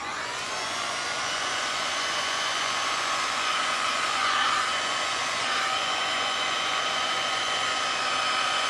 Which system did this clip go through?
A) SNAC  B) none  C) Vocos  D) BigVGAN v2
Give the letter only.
C